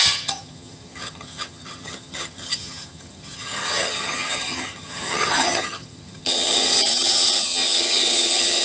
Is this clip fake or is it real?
fake